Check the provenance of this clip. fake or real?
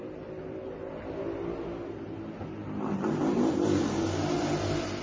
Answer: real